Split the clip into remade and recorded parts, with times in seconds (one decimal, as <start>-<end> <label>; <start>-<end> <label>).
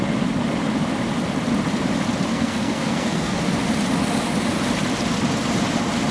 0.0-2.3 recorded; 2.3-3.4 remade; 3.4-6.1 recorded